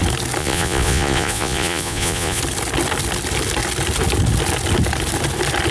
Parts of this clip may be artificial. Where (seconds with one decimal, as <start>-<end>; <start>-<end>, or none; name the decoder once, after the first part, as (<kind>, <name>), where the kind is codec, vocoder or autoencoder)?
0.4-2.4 (vocoder, Vocos)